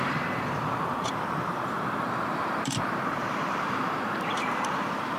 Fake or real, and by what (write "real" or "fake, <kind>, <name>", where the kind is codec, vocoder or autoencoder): fake, vocoder, BigVGAN v2